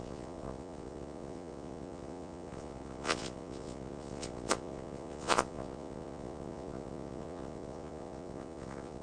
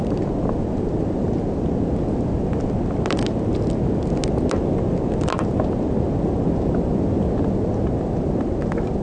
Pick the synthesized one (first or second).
first